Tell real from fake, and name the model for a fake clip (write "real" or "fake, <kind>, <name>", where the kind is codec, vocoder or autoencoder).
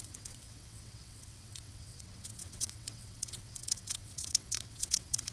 fake, vocoder, WaveNeXt